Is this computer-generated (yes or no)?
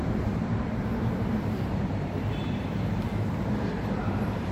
yes